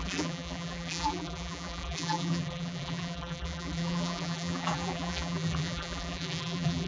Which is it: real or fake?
fake